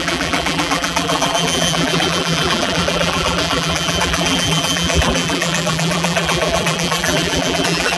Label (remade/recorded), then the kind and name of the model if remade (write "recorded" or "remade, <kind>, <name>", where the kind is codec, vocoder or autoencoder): remade, vocoder, BigVGAN v2